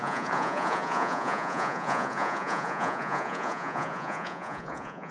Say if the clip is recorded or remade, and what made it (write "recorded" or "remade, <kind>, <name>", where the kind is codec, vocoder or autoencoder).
remade, vocoder, Vocos